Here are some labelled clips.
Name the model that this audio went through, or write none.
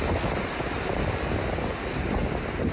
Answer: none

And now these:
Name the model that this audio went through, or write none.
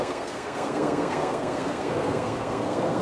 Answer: codec, SNAC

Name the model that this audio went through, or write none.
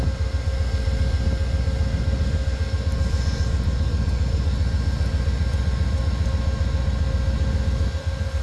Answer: none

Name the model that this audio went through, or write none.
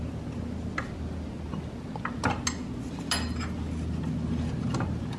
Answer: none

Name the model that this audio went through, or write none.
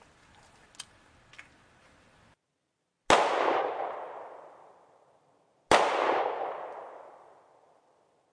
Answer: none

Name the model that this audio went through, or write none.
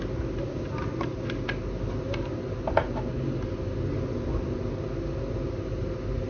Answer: none